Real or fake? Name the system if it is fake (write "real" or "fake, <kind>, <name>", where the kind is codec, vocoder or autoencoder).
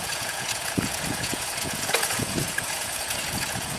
fake, vocoder, Vocos